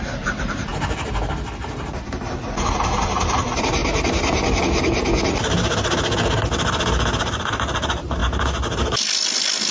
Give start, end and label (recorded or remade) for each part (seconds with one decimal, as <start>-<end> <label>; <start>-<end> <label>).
0.0-0.7 remade; 0.7-3.0 recorded; 3.0-3.8 remade; 3.8-7.2 recorded; 7.2-8.2 remade; 8.2-9.7 recorded